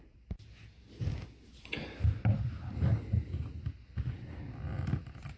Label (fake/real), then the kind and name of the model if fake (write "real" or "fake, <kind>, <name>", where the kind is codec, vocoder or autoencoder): real